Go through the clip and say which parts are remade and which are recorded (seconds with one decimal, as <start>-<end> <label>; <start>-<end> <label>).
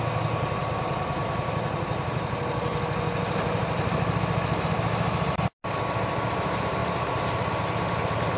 0.0-0.6 recorded; 0.6-1.5 remade; 1.5-6.8 recorded; 6.8-7.6 remade; 7.6-8.4 recorded